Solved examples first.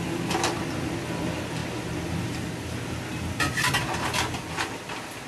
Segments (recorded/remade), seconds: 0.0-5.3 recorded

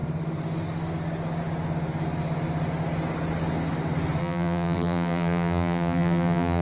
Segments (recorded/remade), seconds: 0.0-4.2 recorded; 4.2-6.6 remade

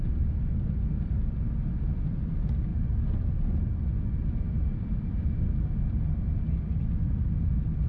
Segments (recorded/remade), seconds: 0.0-2.7 recorded; 2.7-6.2 remade; 6.2-7.9 recorded

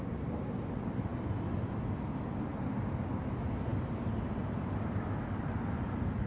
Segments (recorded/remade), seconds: 0.0-1.1 recorded; 1.1-1.8 remade; 1.8-2.5 recorded; 2.5-3.2 remade; 3.2-3.7 recorded; 3.7-5.6 remade; 5.6-6.3 recorded

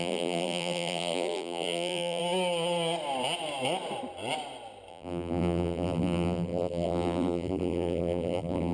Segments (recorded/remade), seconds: 0.0-2.2 remade; 2.2-4.9 recorded; 4.9-8.7 remade

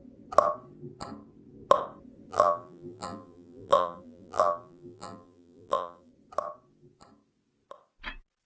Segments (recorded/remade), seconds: 0.0-2.3 recorded; 2.3-6.1 remade; 6.1-8.5 recorded

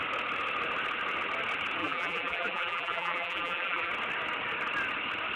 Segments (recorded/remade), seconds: 0.0-1.8 recorded; 1.8-3.9 remade; 3.9-5.4 recorded